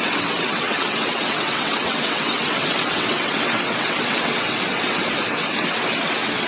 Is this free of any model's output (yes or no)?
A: no